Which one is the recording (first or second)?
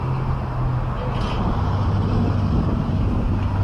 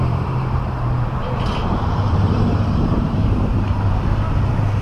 first